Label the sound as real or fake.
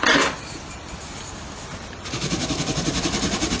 real